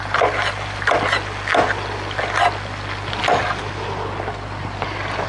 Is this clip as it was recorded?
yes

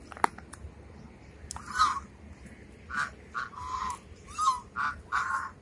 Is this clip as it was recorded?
yes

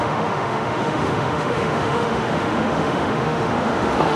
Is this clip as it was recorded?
no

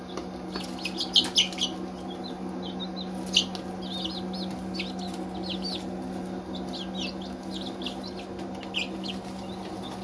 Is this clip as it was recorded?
yes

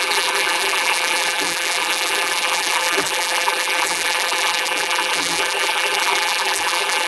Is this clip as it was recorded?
no